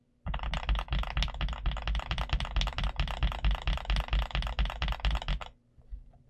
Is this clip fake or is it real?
real